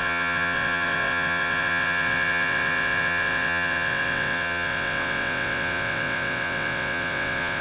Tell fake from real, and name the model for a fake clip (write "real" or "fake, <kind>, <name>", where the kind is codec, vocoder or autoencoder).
fake, vocoder, WaveNeXt